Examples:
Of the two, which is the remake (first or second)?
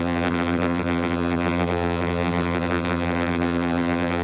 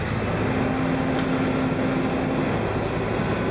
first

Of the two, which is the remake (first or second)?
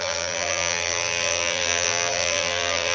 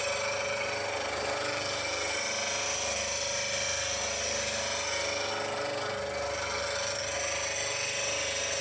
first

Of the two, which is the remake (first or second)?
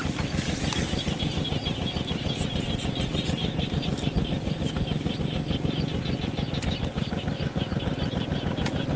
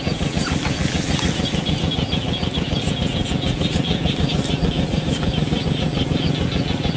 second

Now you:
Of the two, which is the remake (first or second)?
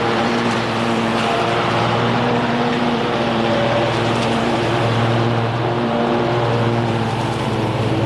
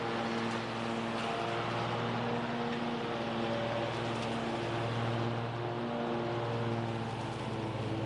first